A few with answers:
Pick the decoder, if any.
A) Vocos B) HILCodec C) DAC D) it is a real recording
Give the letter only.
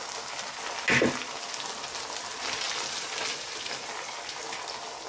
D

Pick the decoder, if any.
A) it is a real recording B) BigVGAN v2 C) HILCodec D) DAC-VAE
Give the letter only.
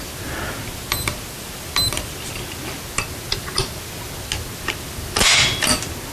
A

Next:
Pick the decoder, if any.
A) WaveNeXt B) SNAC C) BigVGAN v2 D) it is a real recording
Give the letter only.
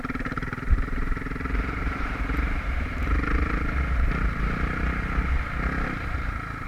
C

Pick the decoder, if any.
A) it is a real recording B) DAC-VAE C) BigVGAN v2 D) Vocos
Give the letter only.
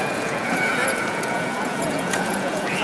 D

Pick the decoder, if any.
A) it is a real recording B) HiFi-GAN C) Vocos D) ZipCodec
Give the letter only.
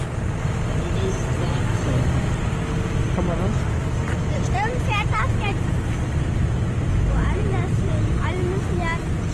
A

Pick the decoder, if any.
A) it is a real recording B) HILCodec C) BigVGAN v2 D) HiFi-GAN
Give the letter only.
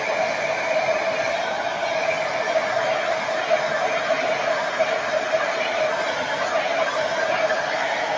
A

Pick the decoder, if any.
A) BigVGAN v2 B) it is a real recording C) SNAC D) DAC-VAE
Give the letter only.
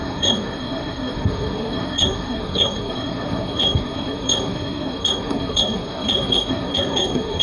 C